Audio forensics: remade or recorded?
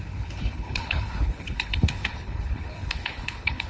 remade